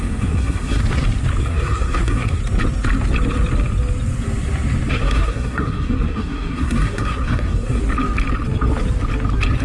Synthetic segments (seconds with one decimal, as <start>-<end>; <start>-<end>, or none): 0.0-0.8; 1.4-2.4; 4.9-7.8